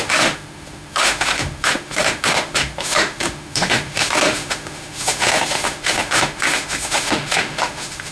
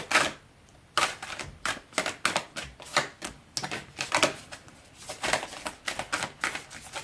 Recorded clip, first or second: second